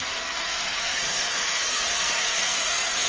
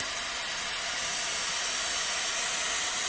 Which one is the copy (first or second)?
first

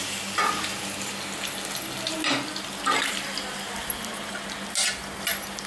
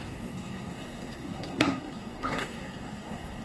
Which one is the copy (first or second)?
second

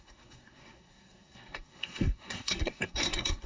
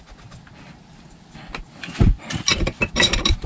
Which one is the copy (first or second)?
first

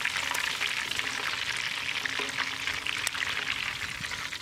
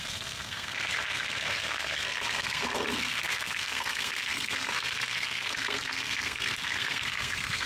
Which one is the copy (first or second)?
second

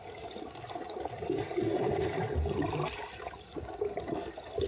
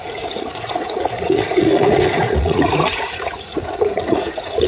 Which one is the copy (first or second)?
second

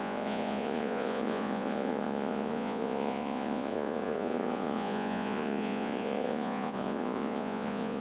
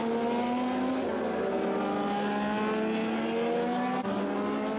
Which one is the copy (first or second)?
first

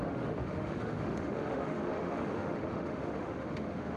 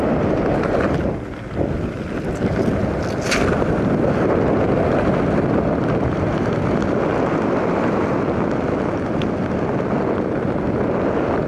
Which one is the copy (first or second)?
first